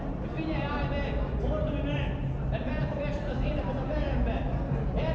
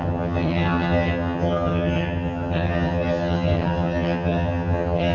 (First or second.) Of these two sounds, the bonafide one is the first